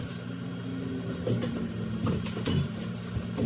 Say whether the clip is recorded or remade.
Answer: recorded